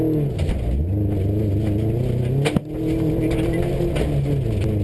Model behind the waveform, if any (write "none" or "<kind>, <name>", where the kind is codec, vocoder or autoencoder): none